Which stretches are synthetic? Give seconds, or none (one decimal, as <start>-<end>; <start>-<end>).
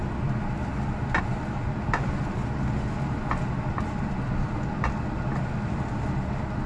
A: none